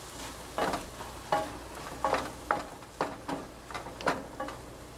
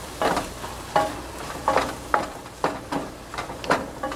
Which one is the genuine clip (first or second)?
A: first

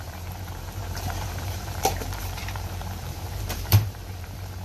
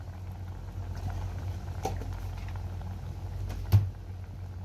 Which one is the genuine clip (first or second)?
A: second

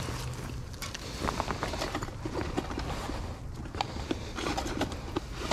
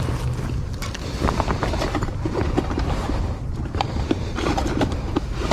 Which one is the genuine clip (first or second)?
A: first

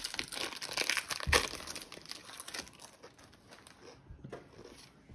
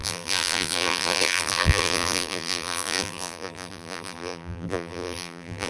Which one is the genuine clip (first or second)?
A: first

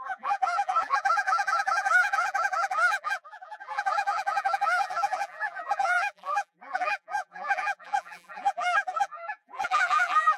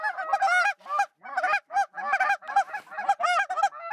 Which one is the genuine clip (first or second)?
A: second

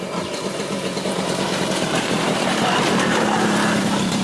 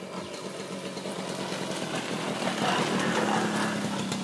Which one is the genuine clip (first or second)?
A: second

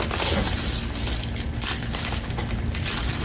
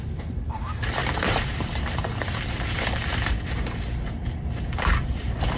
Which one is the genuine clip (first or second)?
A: first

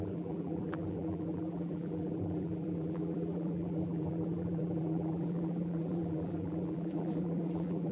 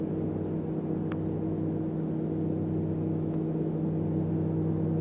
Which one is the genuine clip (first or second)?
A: second